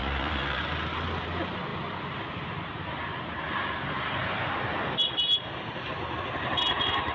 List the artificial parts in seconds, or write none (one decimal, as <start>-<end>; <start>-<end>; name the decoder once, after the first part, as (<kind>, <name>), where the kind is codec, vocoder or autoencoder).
0.0-0.6 (vocoder, Vocos)